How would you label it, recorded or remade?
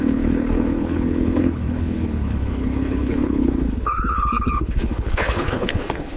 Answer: remade